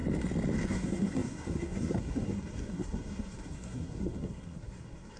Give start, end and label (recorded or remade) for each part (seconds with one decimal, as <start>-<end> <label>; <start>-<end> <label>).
0.0-0.7 recorded; 0.7-5.2 remade